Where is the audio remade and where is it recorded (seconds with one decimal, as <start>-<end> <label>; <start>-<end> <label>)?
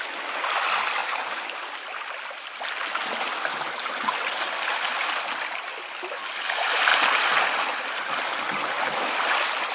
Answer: 0.0-1.0 recorded; 1.0-1.7 remade; 1.7-6.9 recorded; 6.9-8.2 remade; 8.2-9.7 recorded